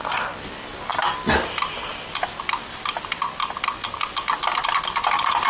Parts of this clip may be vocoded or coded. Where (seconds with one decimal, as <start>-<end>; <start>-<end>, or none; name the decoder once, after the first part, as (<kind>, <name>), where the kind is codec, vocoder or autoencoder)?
none